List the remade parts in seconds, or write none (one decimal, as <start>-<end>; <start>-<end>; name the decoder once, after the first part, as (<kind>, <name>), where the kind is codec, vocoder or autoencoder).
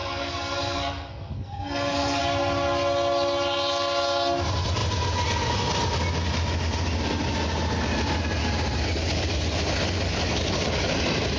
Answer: 0.0-2.2 (codec, SNAC)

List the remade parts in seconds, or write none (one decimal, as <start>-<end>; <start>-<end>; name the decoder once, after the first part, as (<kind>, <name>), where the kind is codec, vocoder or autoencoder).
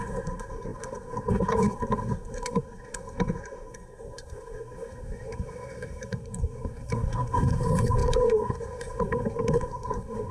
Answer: 0.0-10.3 (codec, SNAC)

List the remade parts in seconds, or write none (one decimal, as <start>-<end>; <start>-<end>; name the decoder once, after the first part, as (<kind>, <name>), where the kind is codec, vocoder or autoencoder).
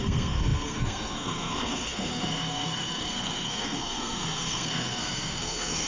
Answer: 0.0-5.9 (codec, SNAC)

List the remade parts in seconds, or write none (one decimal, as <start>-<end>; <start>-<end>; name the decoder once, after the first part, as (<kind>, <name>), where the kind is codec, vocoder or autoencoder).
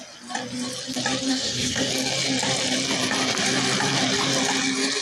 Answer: 1.3-1.9 (codec, SNAC)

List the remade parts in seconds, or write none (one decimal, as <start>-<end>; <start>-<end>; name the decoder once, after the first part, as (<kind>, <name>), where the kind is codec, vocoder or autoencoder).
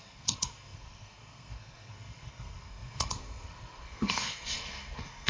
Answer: 0.0-5.3 (codec, SNAC)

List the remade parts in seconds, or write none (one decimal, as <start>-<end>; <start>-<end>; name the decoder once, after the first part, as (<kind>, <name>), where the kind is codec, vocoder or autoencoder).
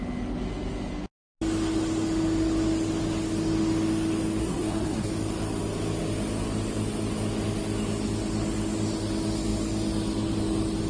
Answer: 4.4-5.1 (codec, SNAC)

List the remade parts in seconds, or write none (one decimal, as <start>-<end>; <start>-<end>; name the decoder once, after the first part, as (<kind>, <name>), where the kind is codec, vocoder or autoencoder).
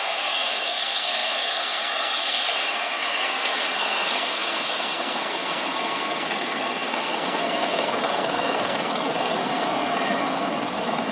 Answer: 0.0-11.1 (codec, SNAC)